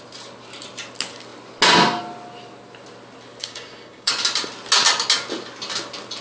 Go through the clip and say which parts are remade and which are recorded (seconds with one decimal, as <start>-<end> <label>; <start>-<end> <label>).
0.0-3.4 recorded; 3.4-4.1 remade; 4.1-6.2 recorded